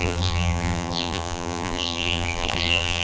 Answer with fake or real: fake